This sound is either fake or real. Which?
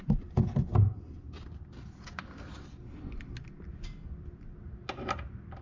real